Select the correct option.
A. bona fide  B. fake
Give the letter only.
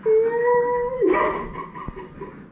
A